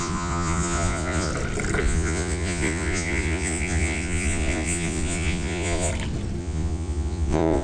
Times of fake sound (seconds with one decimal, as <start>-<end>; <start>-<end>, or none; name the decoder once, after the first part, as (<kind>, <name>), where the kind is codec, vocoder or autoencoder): 0.0-1.3 (vocoder, Vocos); 1.8-5.9; 6.4-7.6